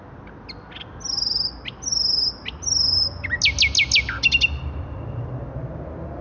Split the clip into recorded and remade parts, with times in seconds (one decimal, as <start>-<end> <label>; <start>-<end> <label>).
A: 0.0-6.2 recorded